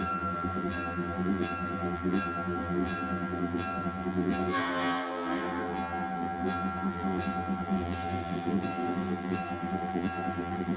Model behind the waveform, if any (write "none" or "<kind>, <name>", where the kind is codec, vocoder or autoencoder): vocoder, BigVGAN v2